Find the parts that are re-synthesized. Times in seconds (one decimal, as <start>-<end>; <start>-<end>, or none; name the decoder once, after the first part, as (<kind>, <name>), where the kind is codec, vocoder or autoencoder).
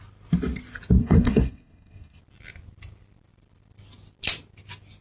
1.0-2.2 (codec, SNAC)